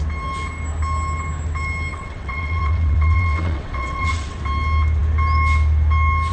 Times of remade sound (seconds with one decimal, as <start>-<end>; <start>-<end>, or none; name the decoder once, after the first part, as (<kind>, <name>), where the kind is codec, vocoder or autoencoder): 1.9-4.4 (vocoder, WaveNeXt)